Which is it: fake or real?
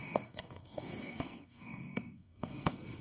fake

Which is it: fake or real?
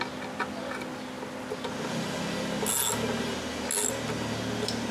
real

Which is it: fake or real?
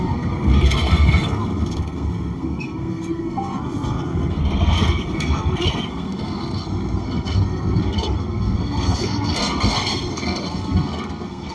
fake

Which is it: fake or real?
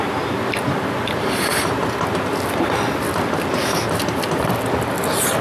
fake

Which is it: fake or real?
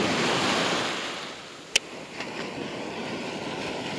real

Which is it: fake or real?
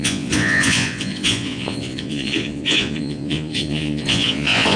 fake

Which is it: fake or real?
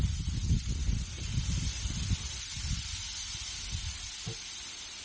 real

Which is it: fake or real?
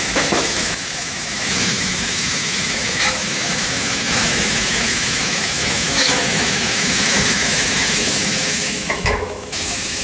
fake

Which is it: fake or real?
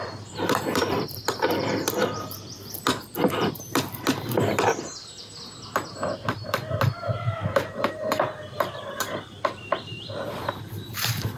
fake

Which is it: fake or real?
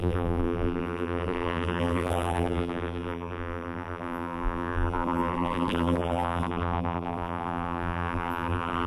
fake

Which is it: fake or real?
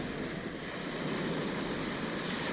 real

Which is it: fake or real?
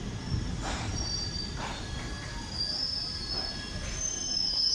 real